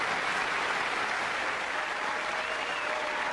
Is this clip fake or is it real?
real